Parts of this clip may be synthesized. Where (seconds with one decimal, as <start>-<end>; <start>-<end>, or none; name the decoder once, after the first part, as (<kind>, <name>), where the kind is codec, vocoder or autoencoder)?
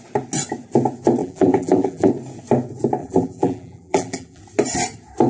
1.2-2.1 (vocoder, BigVGAN v2); 3.0-4.4